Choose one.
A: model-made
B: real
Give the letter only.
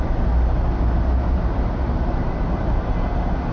B